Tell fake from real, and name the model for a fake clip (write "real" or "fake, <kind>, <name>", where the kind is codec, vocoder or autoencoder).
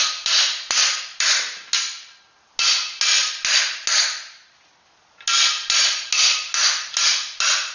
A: real